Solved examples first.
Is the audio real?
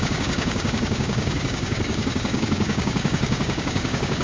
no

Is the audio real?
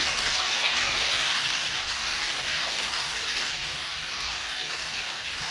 no